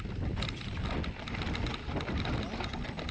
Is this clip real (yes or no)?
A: yes